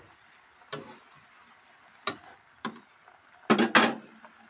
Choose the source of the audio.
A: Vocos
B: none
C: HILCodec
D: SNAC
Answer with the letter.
B